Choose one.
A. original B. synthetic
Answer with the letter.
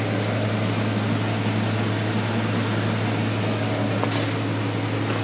A